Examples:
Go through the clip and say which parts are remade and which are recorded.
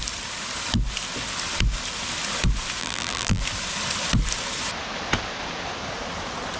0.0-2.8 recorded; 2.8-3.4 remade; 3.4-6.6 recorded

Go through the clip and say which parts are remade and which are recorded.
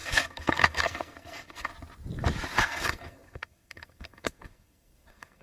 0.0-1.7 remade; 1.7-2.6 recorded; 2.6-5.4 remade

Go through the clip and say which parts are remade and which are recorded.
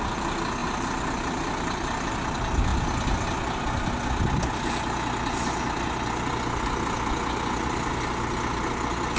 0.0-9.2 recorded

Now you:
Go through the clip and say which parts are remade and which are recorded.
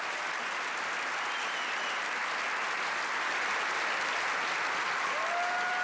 0.0-5.8 recorded